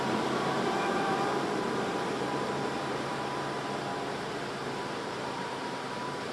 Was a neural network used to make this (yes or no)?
yes